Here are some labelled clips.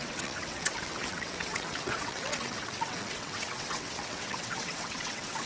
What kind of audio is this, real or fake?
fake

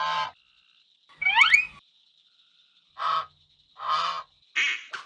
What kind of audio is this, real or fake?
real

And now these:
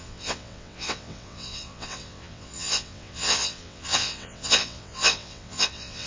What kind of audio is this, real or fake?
fake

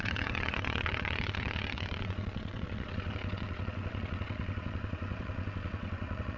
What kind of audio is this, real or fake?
fake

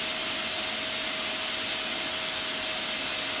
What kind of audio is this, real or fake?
real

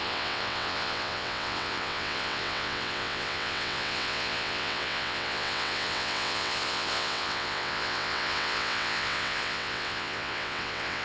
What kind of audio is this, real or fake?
fake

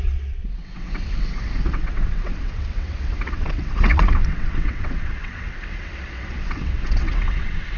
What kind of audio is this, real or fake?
fake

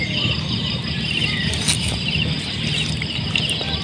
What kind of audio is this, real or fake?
real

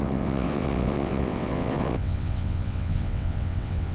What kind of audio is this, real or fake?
fake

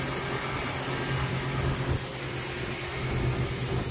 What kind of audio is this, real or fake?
real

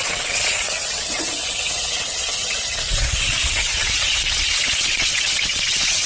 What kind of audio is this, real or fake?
fake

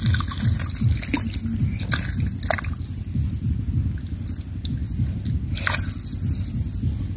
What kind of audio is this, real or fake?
real